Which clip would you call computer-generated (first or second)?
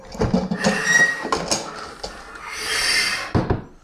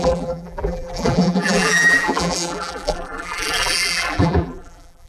second